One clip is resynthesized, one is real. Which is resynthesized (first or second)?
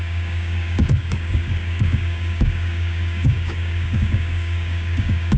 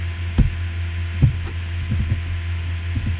first